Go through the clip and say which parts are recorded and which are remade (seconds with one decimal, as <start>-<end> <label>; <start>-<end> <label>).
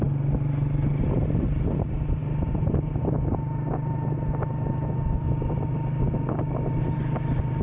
0.0-7.6 recorded